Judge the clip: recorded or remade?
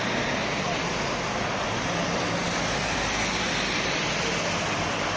recorded